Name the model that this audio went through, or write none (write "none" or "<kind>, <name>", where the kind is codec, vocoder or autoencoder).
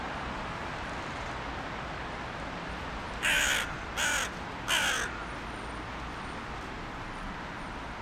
none